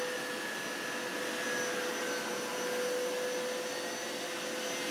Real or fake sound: real